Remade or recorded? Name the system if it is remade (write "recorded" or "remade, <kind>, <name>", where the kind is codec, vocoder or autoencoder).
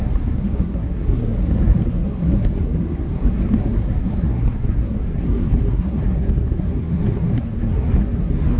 remade, codec, SNAC